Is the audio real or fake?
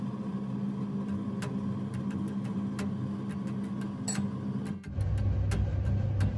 real